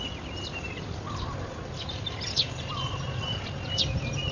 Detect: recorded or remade recorded